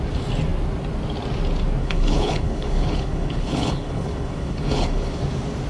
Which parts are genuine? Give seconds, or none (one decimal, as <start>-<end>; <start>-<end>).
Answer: 0.0-1.8; 5.2-5.7